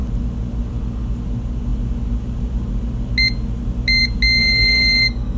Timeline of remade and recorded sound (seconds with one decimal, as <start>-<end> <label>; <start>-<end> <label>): 0.0-4.4 recorded; 4.4-5.4 remade